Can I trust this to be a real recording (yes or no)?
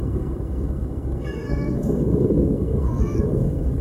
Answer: no